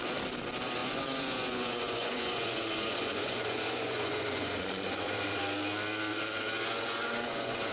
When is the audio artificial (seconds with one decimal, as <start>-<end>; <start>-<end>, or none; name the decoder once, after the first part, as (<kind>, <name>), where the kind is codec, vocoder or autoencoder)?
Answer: 0.8-5.4 (vocoder, Vocos); 6.1-7.7

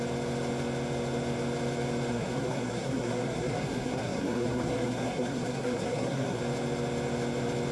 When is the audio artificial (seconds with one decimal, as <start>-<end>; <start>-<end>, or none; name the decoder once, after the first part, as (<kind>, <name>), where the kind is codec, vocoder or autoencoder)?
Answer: 2.1-6.4 (codec, SNAC)

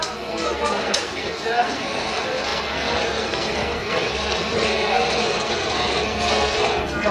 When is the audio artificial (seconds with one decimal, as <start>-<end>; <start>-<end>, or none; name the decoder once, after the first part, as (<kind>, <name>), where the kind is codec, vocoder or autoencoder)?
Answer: 0.0-7.1 (codec, SNAC)

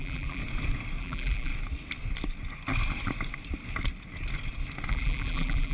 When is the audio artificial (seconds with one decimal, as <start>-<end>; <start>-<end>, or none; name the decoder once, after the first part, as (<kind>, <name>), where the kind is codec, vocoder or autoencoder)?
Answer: 0.0-0.4 (vocoder, BigVGAN v2); 1.0-1.5; 4.9-5.7

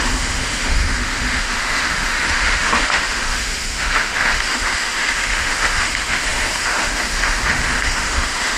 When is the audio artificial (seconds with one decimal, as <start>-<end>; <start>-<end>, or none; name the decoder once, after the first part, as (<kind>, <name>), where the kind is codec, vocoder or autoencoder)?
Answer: 0.0-8.6 (autoencoder, DAC-VAE)

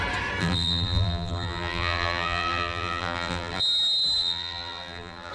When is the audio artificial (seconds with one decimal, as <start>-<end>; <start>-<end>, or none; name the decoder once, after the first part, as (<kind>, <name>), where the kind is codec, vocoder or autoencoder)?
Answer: 0.4-3.6 (vocoder, BigVGAN v2); 4.2-5.3

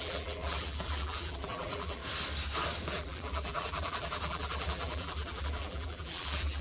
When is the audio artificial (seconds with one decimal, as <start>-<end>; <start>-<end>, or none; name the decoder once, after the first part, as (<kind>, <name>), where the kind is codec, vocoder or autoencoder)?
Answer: 0.0-2.0 (vocoder, BigVGAN v2); 2.9-6.6